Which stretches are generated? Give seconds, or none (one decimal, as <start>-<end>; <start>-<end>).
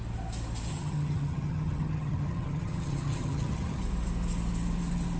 0.7-3.8